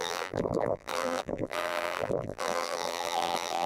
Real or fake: fake